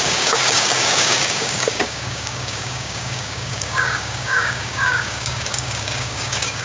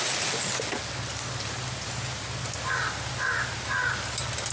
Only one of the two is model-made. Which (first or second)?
first